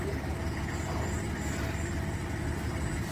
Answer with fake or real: real